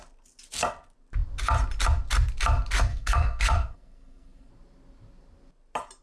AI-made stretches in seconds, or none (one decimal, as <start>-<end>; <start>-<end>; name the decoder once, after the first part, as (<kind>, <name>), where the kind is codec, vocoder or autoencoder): 2.9-4.5 (codec, SNAC)